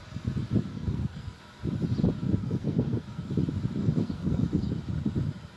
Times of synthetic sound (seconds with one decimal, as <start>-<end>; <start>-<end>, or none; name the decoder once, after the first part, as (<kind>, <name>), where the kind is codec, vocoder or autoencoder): 0.7-1.4 (codec, SNAC); 2.4-3.2; 3.8-4.7